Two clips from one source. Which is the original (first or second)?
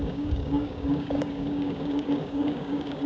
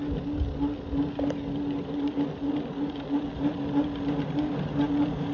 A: second